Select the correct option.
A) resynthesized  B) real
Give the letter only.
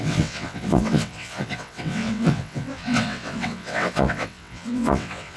A